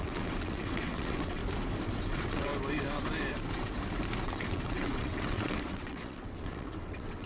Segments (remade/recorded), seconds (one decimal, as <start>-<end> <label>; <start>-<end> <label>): 0.0-1.4 remade; 1.4-2.1 recorded; 2.1-2.5 remade; 2.5-4.2 recorded; 4.2-7.3 remade